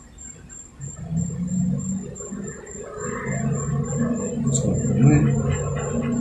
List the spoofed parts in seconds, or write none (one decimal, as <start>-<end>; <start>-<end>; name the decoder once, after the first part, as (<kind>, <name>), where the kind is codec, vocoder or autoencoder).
none